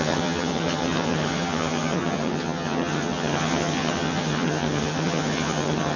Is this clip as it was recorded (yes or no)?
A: no